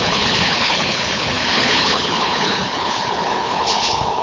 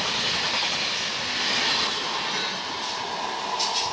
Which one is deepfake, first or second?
first